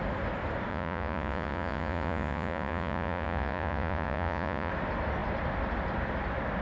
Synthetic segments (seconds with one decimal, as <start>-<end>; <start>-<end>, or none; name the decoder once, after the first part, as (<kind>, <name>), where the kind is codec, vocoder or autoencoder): 0.7-4.7 (vocoder, Vocos)